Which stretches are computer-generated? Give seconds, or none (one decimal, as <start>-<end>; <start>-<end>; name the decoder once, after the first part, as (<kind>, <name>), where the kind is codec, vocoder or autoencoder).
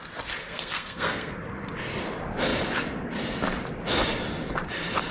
0.4-1.3 (codec, SNAC)